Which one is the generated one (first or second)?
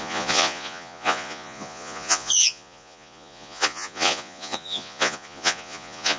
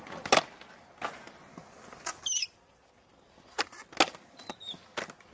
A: first